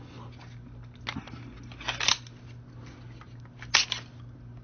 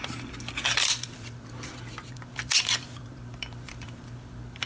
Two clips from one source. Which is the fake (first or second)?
second